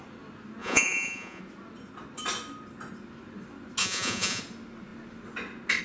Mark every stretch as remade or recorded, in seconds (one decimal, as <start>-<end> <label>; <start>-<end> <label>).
0.0-0.6 recorded; 0.6-1.4 remade; 1.4-3.8 recorded; 3.8-4.4 remade; 4.4-5.8 recorded

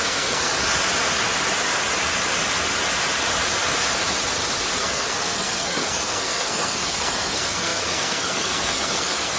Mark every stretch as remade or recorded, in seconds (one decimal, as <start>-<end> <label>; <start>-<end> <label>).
0.0-0.5 remade; 0.5-4.8 recorded; 4.8-9.4 remade

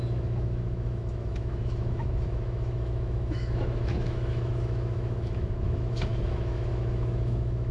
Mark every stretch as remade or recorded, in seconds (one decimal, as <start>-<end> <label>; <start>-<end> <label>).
0.0-7.7 remade

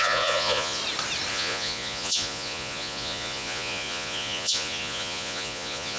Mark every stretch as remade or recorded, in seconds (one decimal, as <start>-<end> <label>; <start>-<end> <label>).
0.0-0.8 remade; 0.8-1.3 recorded; 1.3-6.0 remade

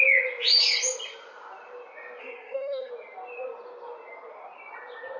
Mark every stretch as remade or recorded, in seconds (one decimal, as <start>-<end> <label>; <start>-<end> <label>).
0.0-2.2 recorded; 2.2-2.9 remade; 2.9-5.2 recorded

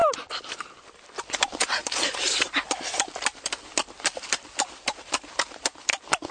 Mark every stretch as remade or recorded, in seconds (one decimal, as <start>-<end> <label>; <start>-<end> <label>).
0.0-6.3 recorded

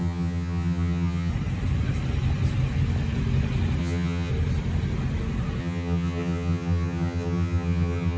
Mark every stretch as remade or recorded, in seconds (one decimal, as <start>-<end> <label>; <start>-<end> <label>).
0.0-1.3 remade; 1.3-3.8 recorded; 3.8-4.3 remade; 4.3-5.6 recorded; 5.6-8.2 remade

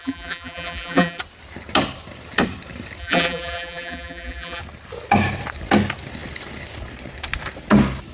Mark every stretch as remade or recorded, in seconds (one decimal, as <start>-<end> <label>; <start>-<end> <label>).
0.0-1.2 remade; 1.2-3.0 recorded; 3.0-4.6 remade; 4.6-8.1 recorded